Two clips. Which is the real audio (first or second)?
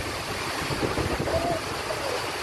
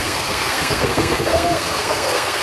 first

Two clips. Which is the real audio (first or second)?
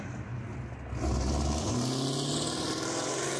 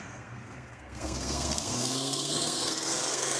first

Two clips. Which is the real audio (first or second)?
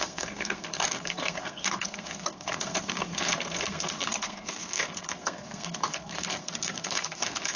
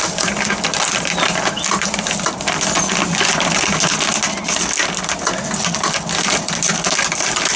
second